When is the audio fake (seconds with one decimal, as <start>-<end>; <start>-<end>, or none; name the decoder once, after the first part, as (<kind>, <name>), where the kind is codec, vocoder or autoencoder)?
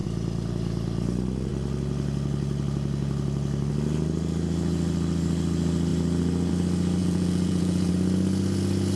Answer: 7.0-7.9 (vocoder, Vocos)